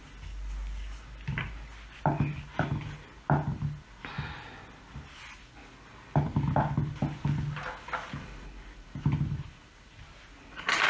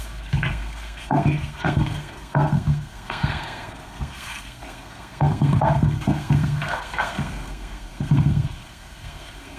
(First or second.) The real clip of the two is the first